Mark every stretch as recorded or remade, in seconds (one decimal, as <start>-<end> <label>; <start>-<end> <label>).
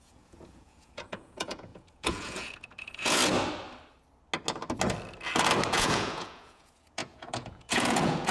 0.0-3.2 remade; 3.2-5.7 recorded; 5.7-8.3 remade